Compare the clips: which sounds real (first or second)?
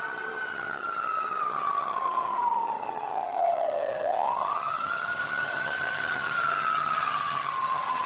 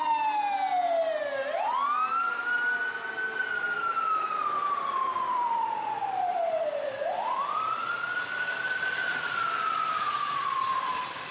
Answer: second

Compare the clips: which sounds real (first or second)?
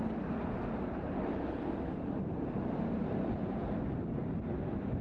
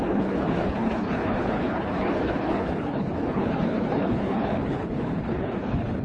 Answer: first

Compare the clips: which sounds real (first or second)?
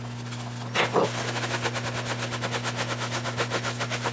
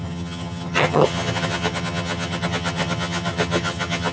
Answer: first